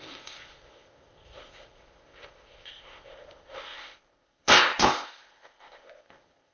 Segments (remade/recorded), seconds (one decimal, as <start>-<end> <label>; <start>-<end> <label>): 0.0-6.5 remade